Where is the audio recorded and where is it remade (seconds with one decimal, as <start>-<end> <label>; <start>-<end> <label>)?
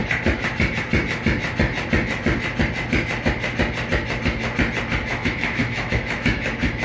0.0-5.1 recorded; 5.1-6.8 remade